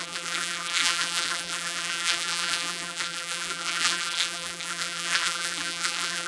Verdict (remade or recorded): remade